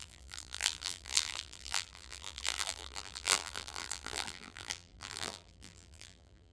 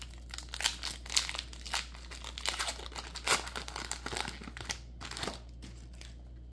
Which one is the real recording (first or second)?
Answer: second